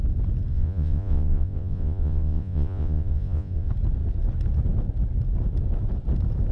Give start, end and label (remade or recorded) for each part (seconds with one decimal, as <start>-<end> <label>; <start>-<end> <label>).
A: 0.0-0.5 recorded; 0.5-3.7 remade; 3.7-6.5 recorded